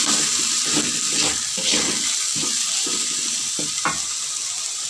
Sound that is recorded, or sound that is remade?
recorded